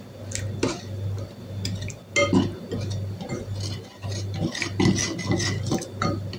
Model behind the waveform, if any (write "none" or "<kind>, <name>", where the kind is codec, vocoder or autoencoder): none